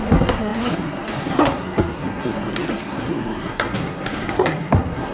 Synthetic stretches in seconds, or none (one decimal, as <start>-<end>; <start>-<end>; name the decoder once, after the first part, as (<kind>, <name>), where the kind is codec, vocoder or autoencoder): 0.0-5.1 (codec, SNAC)